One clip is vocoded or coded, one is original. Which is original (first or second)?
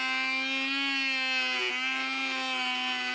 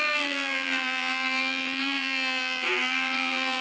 first